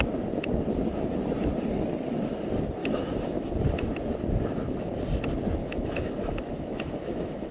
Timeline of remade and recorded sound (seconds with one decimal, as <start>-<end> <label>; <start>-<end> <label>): 0.0-2.8 recorded; 2.8-3.5 remade; 3.5-5.6 recorded; 5.6-7.5 remade

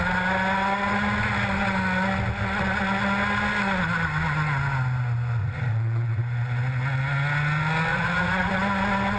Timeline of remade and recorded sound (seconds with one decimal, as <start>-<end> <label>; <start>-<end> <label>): 0.0-5.4 recorded; 5.4-6.2 remade; 6.2-7.9 recorded; 7.9-8.5 remade; 8.5-9.2 recorded

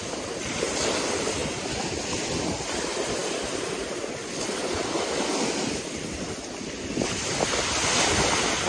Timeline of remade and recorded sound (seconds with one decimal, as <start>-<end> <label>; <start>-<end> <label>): 0.0-8.7 recorded